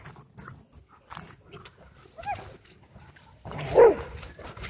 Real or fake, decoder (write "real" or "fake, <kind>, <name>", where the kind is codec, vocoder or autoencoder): real